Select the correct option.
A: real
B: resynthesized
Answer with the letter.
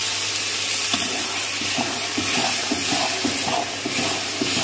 A